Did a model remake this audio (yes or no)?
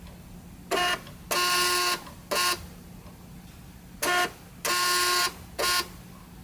no